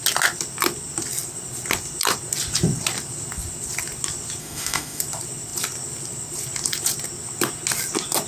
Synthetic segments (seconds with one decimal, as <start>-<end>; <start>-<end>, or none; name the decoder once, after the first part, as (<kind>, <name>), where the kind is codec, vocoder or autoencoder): 4.4-5.0 (autoencoder, DAC-VAE)

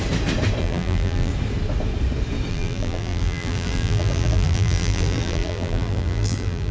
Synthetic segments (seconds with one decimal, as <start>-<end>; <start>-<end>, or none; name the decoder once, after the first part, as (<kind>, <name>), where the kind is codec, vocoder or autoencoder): 0.6-1.3 (vocoder, BigVGAN v2); 2.5-6.7

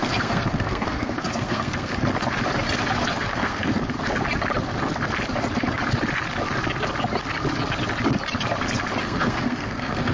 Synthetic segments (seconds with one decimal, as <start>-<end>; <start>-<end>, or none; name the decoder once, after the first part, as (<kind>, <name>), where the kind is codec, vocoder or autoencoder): 0.0-1.9 (codec, SNAC); 3.1-3.8; 9.0-10.1

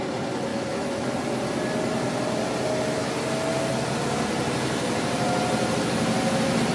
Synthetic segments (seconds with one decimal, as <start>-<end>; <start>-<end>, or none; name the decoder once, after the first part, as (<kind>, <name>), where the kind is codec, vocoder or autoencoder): 0.5-1.1 (autoencoder, DAC-VAE)

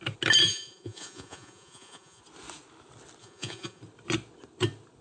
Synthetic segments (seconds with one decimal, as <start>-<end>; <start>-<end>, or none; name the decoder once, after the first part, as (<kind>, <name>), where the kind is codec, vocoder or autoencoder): 0.5-2.2 (vocoder, Vocos); 3.2-3.8

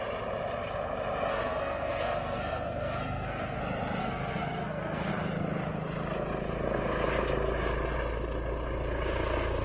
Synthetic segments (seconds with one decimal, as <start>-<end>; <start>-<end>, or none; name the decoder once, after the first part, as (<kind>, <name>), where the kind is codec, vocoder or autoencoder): 1.3-3.6 (codec, SNAC); 4.0-5.1

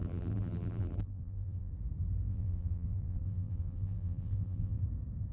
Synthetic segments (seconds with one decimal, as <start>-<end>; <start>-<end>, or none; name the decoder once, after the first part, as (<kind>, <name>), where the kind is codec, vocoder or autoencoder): 0.0-1.7 (vocoder, BigVGAN v2); 2.3-4.8

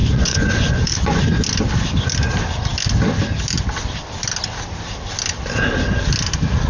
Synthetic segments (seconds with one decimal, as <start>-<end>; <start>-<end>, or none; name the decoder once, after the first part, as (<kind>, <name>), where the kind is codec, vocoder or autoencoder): 0.0-1.4 (vocoder, Vocos)